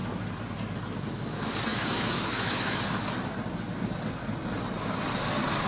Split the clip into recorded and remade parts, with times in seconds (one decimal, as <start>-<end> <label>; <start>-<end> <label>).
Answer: 0.0-1.7 recorded; 1.7-2.8 remade; 2.8-5.7 recorded

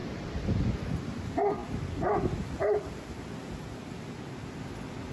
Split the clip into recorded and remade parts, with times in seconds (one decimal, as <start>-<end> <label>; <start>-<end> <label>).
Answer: 0.0-5.1 recorded

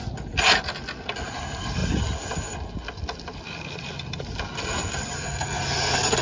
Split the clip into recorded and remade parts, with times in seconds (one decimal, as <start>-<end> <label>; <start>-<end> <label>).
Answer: 0.0-6.2 recorded